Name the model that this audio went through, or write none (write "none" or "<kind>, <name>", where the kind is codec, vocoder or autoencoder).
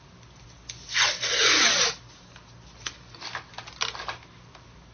none